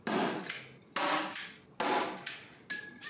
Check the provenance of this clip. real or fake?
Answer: real